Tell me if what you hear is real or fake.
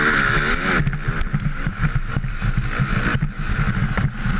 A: real